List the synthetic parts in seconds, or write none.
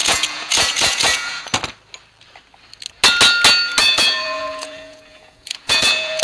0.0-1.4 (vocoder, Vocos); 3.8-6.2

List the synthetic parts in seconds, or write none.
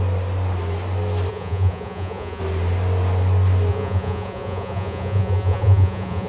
1.3-2.4 (vocoder, Vocos); 3.7-6.3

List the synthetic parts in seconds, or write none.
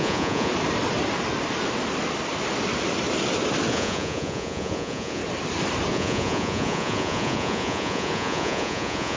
0.0-0.5 (vocoder, Vocos); 3.7-5.2; 5.9-9.2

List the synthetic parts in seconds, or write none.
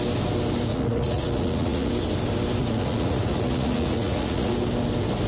0.7-1.9 (vocoder, Vocos); 2.6-4.5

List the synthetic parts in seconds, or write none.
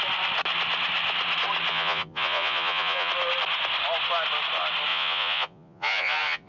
1.7-3.1 (vocoder, Vocos); 4.9-6.5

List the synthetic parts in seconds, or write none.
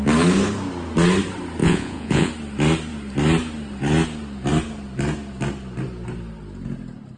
1.6-2.3 (vocoder, Vocos)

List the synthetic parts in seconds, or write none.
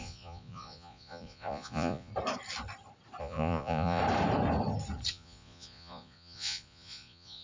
0.0-2.1 (vocoder, Vocos); 3.2-4.0; 5.1-7.4